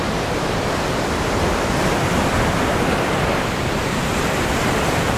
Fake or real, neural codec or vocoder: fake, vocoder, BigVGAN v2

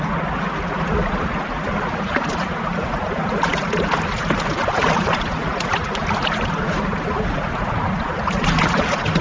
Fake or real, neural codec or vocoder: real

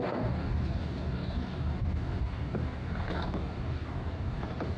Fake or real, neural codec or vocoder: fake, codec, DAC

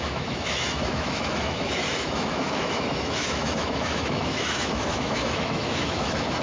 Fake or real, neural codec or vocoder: fake, autoencoder, DAC-VAE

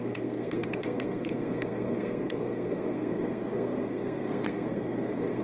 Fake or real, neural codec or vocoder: fake, codec, SNAC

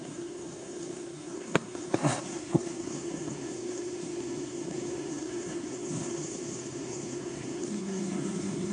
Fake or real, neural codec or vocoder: fake, codec, SNAC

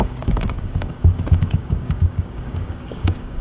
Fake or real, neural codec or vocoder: fake, codec, DAC